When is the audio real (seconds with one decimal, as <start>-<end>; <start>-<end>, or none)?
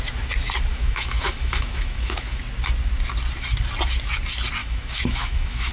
0.0-0.7; 2.4-4.6